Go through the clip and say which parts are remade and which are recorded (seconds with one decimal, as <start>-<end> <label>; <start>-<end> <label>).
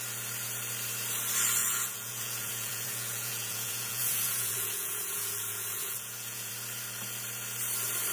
0.0-1.6 recorded; 1.6-6.5 remade; 6.5-8.1 recorded